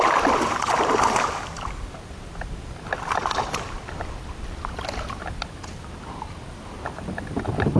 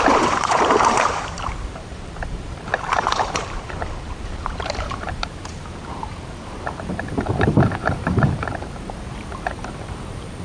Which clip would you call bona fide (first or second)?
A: first